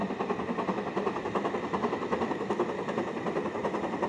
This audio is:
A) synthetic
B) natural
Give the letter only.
B